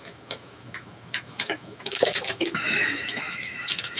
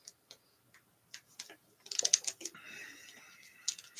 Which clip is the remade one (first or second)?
first